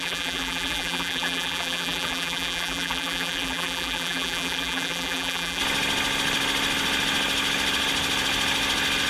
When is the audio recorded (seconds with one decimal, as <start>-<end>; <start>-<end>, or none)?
5.6-9.1